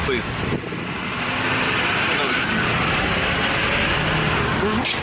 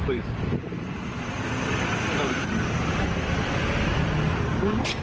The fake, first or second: second